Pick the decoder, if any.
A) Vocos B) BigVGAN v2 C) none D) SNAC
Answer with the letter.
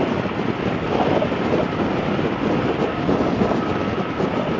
C